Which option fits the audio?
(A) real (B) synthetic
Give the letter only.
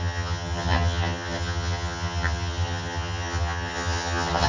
B